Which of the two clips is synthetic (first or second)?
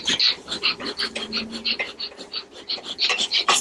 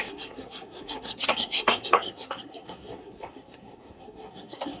second